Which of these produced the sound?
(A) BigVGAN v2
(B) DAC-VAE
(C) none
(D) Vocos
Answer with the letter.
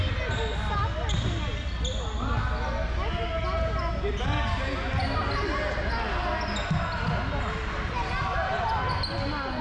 C